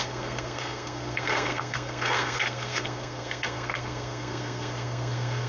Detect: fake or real fake